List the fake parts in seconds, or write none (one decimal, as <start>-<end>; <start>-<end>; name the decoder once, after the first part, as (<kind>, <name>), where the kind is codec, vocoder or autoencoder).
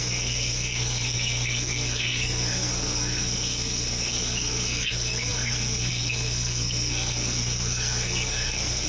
0.0-8.9 (codec, SNAC)